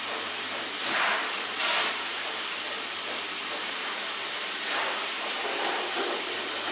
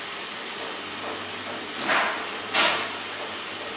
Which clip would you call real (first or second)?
second